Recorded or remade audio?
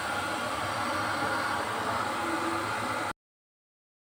recorded